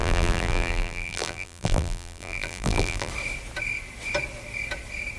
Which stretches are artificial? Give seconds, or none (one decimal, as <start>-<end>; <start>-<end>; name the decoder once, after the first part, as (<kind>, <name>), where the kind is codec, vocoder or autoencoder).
0.0-3.1 (vocoder, BigVGAN v2)